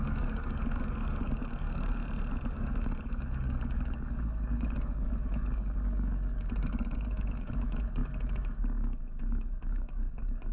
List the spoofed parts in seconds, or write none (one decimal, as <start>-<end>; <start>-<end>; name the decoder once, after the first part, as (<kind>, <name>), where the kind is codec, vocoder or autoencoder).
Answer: 0.0-2.0 (codec, DAC); 2.5-10.5